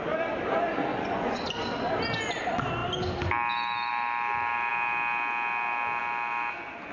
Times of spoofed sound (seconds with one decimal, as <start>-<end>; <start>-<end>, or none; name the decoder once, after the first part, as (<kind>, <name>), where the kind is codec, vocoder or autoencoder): 0.9-1.4 (vocoder, Vocos)